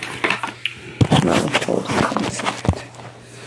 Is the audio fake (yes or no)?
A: no